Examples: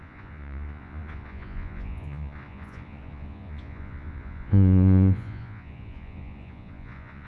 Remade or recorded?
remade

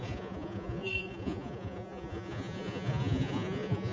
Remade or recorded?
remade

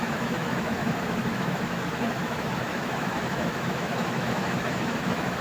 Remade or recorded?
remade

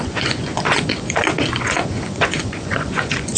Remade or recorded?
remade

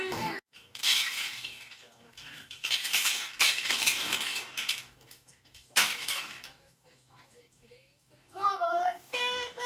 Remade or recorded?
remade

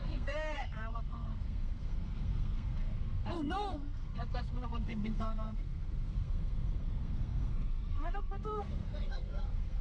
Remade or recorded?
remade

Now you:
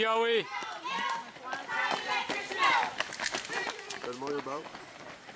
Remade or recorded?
remade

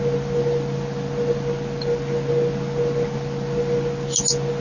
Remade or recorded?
recorded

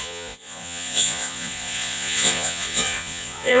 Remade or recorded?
remade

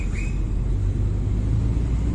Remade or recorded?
recorded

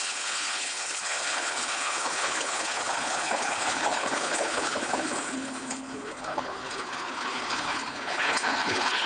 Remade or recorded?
remade